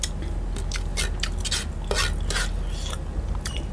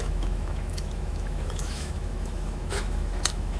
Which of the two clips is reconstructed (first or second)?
second